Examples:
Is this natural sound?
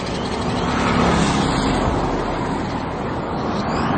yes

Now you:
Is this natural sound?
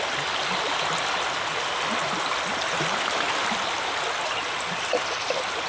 yes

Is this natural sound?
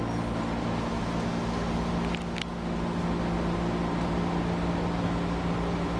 yes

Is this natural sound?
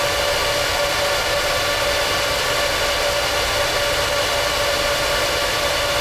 yes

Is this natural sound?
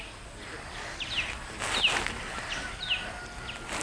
yes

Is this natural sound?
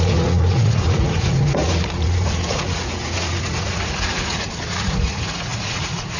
no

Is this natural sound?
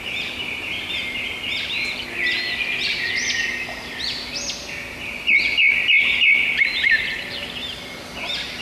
yes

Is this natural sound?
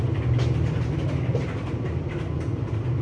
yes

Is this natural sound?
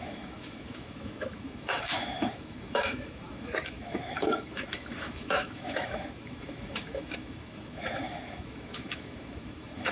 no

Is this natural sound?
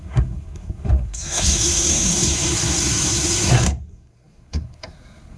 no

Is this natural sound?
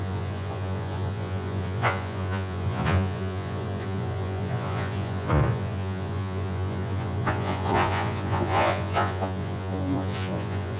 no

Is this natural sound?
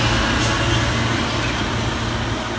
yes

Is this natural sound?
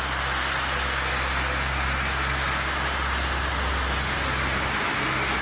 yes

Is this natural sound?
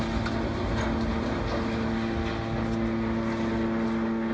yes